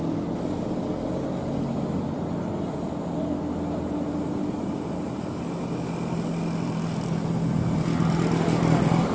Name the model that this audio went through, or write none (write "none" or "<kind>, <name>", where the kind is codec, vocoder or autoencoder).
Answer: none